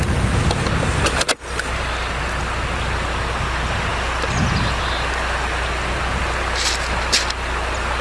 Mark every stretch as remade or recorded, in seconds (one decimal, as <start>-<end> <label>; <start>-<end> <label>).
0.0-8.0 recorded